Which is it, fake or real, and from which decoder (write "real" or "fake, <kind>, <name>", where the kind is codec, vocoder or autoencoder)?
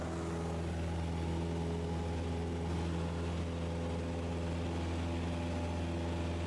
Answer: real